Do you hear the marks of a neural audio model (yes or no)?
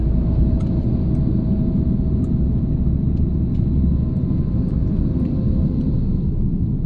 no